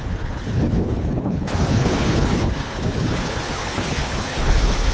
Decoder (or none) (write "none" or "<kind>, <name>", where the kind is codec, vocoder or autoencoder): codec, HILCodec